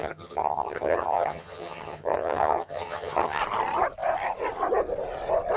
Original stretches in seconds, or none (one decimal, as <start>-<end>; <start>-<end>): 3.4-5.6